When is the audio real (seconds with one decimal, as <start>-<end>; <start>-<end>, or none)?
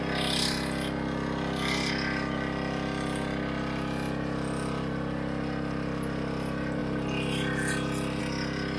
0.0-8.8